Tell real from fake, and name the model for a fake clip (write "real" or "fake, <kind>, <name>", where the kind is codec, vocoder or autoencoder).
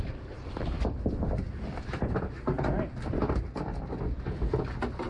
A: real